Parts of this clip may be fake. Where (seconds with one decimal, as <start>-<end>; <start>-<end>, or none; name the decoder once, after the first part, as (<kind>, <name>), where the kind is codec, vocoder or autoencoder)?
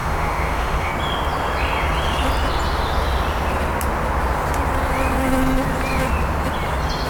0.0-0.9 (autoencoder, DAC-VAE)